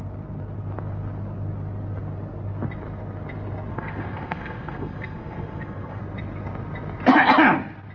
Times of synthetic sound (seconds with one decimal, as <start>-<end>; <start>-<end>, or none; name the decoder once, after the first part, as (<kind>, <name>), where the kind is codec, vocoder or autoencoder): 3.7-6.0 (codec, SNAC)